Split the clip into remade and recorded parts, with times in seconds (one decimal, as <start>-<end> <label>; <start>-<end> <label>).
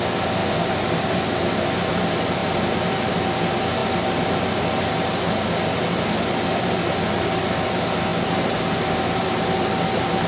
0.0-10.3 recorded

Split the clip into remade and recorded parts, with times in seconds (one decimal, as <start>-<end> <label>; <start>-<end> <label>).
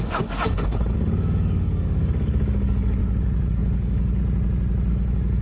0.0-3.0 remade; 3.0-3.5 recorded; 3.5-4.2 remade; 4.2-4.9 recorded; 4.9-5.4 remade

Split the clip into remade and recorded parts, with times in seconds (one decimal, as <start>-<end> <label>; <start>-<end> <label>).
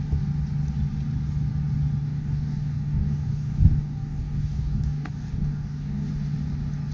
0.0-2.0 recorded; 2.0-6.1 remade; 6.1-6.9 recorded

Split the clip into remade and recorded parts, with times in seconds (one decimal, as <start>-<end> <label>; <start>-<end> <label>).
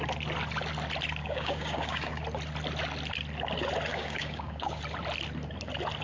0.0-1.2 recorded; 1.2-2.2 remade; 2.2-3.9 recorded; 3.9-4.8 remade; 4.8-6.0 recorded